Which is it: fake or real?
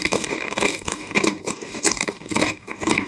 fake